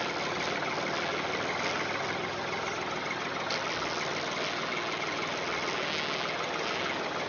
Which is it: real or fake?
real